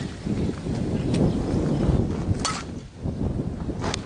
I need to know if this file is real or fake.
real